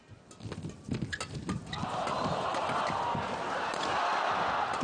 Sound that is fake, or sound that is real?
real